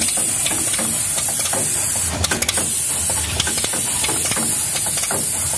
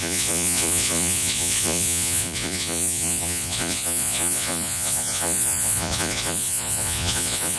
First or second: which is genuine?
first